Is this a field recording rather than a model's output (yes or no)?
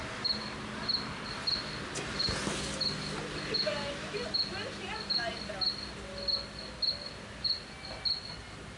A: yes